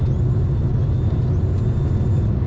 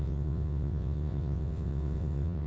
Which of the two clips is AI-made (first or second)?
second